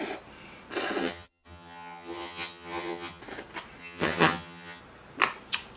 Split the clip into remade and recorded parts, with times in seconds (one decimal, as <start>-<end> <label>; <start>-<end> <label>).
0.0-1.0 recorded; 1.0-3.2 remade; 3.2-3.8 recorded; 3.8-4.8 remade; 4.8-5.8 recorded